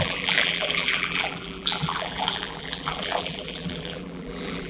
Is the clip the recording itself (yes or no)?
no